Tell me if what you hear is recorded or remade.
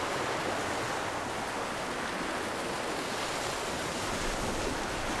recorded